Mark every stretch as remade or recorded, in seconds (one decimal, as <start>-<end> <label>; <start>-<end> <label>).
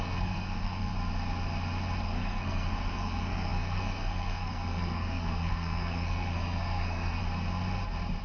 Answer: 0.0-0.9 remade; 0.9-2.0 recorded; 2.0-7.2 remade; 7.2-8.2 recorded